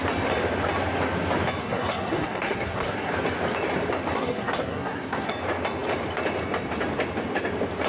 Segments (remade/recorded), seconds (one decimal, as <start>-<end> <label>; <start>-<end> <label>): 0.0-1.6 recorded; 1.6-3.1 remade; 3.1-4.1 recorded; 4.1-5.3 remade; 5.3-7.9 recorded